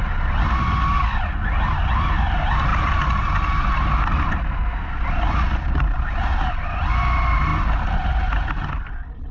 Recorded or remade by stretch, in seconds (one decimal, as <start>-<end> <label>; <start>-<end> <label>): 0.0-9.3 recorded